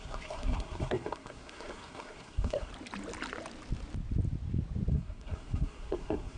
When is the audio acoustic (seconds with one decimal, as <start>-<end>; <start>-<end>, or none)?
2.7-4.9